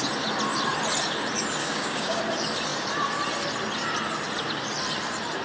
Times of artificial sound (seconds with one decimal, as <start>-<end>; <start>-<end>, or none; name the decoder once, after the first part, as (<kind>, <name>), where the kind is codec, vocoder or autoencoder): 1.6-2.2 (codec, DAC)